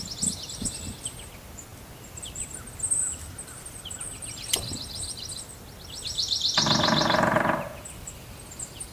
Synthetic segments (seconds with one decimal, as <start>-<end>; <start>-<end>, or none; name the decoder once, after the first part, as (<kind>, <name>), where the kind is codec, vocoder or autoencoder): none